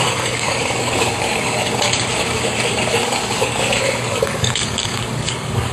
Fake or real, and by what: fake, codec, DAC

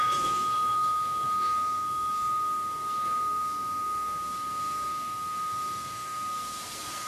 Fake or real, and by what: fake, codec, SNAC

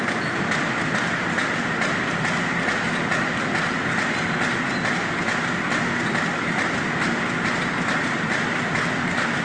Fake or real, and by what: real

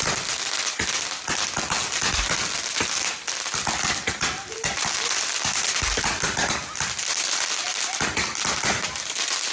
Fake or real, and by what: real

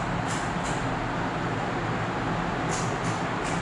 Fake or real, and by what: real